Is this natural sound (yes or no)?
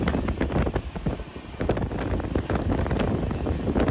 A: yes